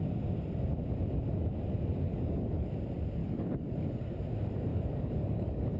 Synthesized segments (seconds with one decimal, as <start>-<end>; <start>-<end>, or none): 2.1-2.7; 3.2-4.2; 4.7-5.8